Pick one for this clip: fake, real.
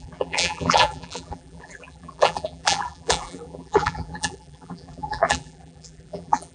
fake